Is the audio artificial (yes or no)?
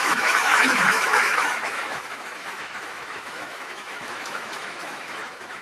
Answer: yes